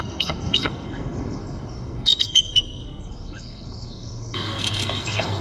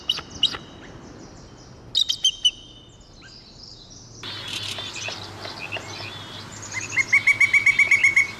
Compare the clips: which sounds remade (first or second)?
first